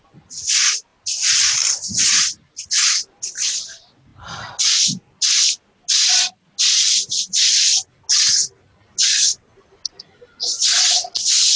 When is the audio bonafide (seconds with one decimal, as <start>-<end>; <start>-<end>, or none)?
0.0-11.6